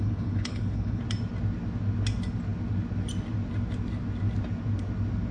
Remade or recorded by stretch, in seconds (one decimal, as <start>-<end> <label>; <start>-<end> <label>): 0.0-1.0 remade; 1.0-5.3 recorded